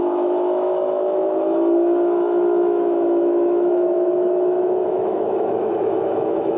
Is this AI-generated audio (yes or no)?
yes